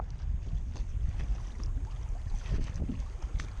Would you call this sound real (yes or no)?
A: yes